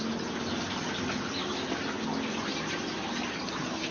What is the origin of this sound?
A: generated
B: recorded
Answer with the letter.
B